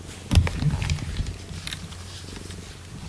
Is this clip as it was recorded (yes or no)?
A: yes